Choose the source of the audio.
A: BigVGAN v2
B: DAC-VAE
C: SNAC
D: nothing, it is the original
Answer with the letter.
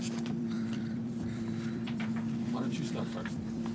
A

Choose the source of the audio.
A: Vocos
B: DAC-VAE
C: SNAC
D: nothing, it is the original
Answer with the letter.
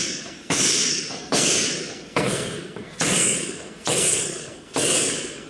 C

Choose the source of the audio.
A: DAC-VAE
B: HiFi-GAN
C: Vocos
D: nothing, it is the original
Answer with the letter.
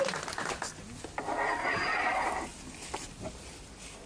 D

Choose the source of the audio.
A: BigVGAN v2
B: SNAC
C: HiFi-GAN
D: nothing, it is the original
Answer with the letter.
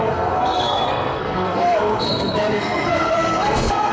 B